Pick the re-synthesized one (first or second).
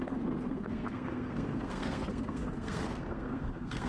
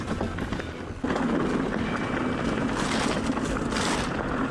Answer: first